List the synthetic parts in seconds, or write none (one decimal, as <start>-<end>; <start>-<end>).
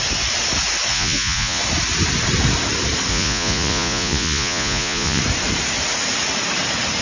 0.9-1.6; 3.1-5.2